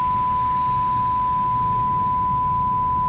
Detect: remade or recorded recorded